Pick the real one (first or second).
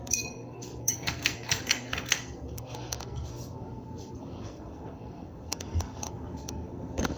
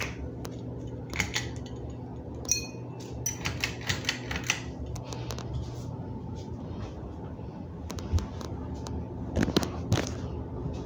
second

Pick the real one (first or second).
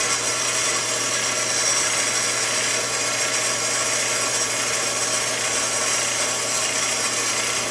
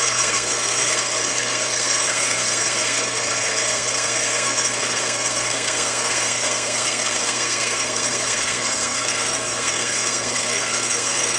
first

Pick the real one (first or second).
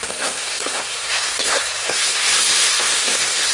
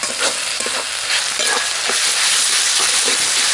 second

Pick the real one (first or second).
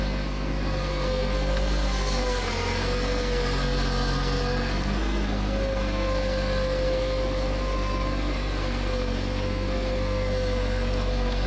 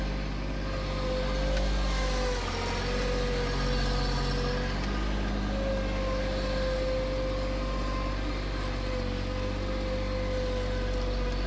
second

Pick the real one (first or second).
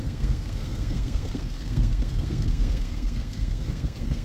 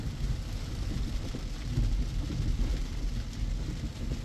second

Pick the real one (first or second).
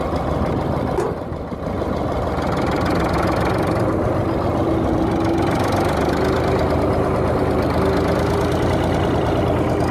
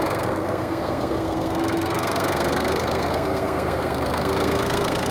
first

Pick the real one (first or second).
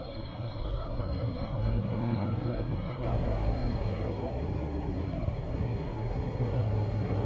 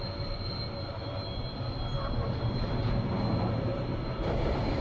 second